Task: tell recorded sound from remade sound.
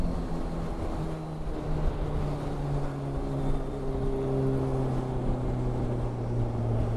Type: recorded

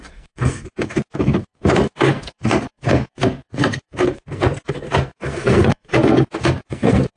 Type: remade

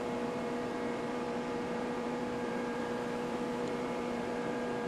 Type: remade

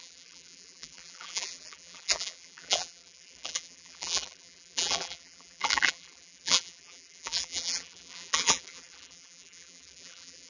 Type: remade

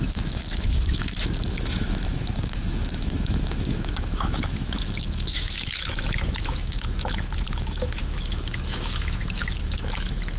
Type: remade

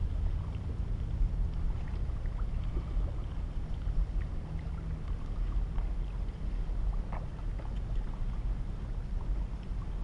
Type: recorded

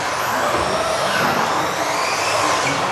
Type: recorded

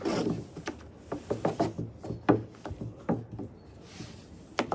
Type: recorded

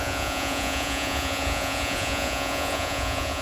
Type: remade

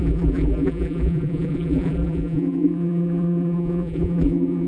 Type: remade